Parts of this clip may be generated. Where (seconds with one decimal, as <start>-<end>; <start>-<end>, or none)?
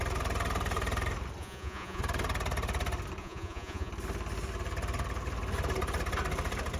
1.4-2.0; 3.2-3.9